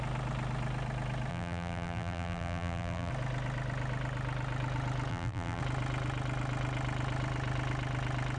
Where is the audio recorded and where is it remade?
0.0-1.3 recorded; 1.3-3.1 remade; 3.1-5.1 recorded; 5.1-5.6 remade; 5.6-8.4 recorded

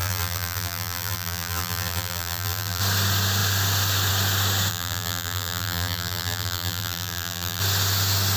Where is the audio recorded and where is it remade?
0.0-2.8 remade; 2.8-4.7 recorded; 4.7-7.6 remade; 7.6-8.4 recorded

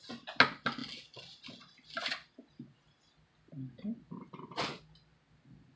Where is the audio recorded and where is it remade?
0.0-5.8 recorded

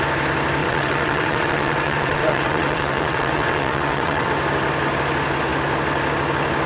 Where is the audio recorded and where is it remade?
0.0-0.6 recorded; 0.6-4.3 remade; 4.3-6.7 recorded

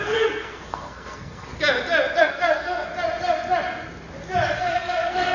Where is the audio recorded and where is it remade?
0.0-1.5 remade; 1.5-2.2 recorded; 2.2-2.9 remade; 2.9-4.6 recorded; 4.6-5.3 remade

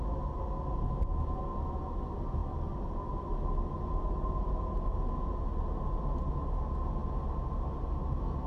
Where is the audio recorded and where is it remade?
0.0-8.5 recorded

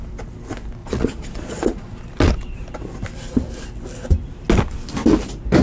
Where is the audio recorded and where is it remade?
0.0-0.8 recorded; 0.8-2.0 remade; 2.0-5.6 recorded

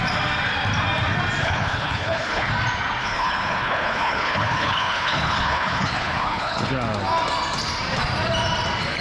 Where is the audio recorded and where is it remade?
0.0-1.4 recorded; 1.4-2.5 remade; 2.5-3.0 recorded; 3.0-6.7 remade; 6.7-9.0 recorded